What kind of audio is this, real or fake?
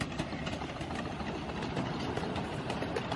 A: real